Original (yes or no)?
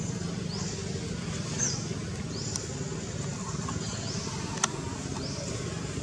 yes